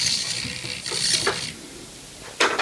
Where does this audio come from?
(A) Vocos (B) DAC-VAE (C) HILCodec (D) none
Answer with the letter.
D